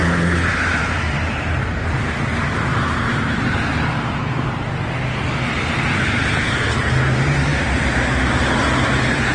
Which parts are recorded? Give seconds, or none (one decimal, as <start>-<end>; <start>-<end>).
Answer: 0.0-0.5; 2.7-6.9